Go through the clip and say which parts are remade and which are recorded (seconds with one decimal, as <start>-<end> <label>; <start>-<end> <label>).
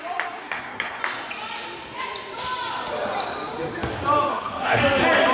0.0-0.4 recorded; 0.4-1.0 remade; 1.0-4.3 recorded; 4.3-4.8 remade; 4.8-5.3 recorded